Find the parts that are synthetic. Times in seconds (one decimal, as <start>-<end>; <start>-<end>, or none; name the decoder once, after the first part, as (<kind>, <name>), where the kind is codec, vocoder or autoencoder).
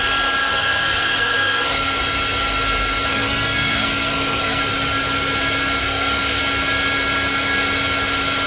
0.4-2.0 (codec, SNAC); 3.1-4.6; 5.8-6.4